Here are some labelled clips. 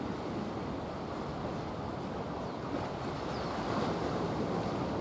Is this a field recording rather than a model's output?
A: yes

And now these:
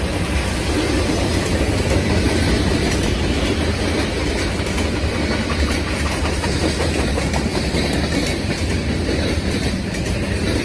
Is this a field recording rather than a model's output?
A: yes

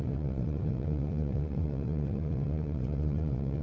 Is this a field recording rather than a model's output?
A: no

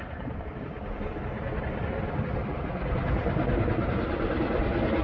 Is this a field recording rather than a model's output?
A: yes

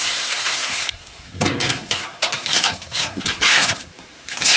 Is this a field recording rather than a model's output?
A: no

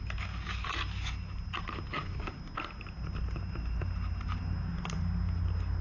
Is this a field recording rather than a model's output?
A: yes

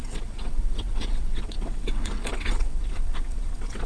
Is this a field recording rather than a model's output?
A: no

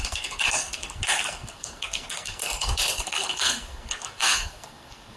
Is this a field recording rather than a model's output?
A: no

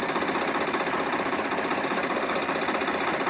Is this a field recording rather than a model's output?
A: yes